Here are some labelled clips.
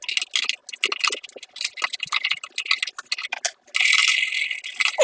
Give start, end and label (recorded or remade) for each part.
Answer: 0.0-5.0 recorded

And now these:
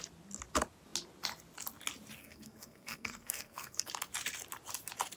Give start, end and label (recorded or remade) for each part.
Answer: 0.0-2.2 recorded; 2.2-3.9 remade; 3.9-5.2 recorded

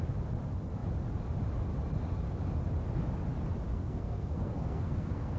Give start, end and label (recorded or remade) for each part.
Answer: 0.0-3.7 recorded; 3.7-5.4 remade